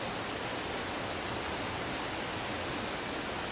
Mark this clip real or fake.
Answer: real